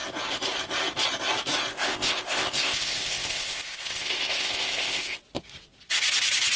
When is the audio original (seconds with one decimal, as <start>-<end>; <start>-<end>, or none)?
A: 0.0-1.7; 5.2-6.6